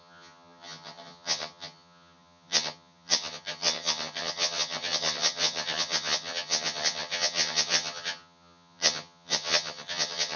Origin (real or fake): fake